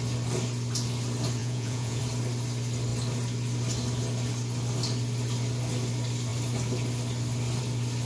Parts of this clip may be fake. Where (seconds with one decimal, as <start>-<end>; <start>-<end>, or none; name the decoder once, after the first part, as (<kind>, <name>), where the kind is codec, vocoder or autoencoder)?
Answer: 1.4-2.0 (vocoder, Vocos)